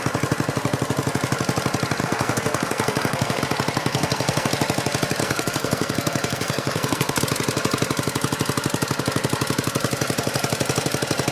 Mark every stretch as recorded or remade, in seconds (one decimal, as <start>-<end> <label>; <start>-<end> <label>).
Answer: 0.0-2.0 recorded; 2.0-3.4 remade; 3.4-3.8 recorded; 3.8-4.5 remade; 4.5-5.2 recorded; 5.2-7.2 remade; 7.2-11.3 recorded